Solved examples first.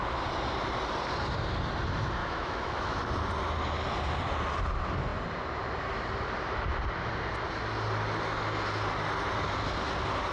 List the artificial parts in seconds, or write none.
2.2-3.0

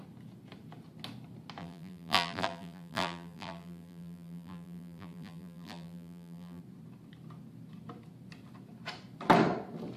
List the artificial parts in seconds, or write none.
1.6-6.6